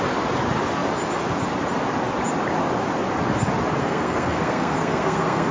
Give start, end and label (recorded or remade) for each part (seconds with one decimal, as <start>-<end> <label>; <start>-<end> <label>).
0.0-3.8 recorded; 3.8-5.5 remade